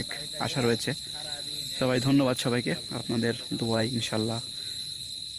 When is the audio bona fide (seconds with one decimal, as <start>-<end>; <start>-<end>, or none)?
0.0-3.0; 3.9-5.4